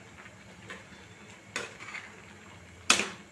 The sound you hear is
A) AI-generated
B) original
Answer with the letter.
B